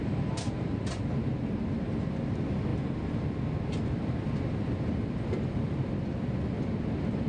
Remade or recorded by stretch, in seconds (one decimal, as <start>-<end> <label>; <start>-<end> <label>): 0.0-7.3 recorded